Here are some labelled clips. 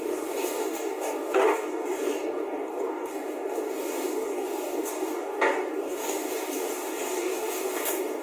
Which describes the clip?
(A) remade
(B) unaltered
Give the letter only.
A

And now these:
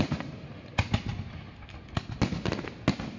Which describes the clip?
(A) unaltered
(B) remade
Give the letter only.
A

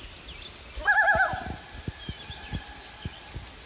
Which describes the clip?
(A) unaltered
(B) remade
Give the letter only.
A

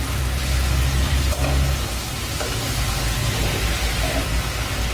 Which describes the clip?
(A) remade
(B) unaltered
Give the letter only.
B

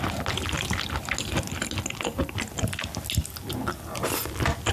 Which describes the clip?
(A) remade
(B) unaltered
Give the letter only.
B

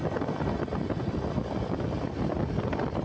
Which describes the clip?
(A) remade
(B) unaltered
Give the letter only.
B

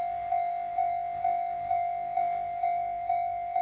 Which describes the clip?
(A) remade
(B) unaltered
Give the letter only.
A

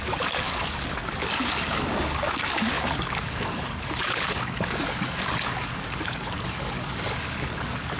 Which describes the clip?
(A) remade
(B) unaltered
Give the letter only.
A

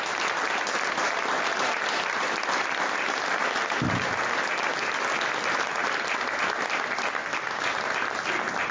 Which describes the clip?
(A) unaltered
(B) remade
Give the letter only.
A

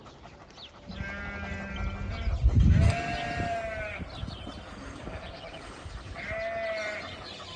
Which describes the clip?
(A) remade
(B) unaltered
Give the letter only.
B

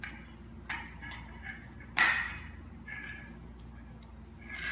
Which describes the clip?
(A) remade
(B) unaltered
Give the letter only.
B